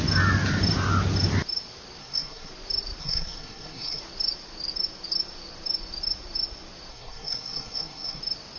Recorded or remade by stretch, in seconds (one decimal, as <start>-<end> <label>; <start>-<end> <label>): 0.0-2.0 recorded; 2.0-2.5 remade; 2.5-3.0 recorded; 3.0-4.0 remade; 4.0-6.9 recorded; 6.9-8.2 remade; 8.2-8.6 recorded